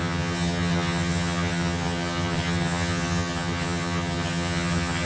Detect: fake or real fake